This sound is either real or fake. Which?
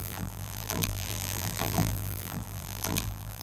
fake